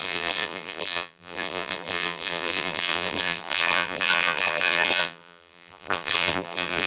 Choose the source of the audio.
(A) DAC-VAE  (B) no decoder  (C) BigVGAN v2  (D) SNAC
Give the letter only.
C